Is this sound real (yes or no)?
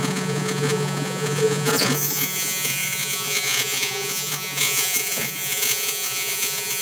no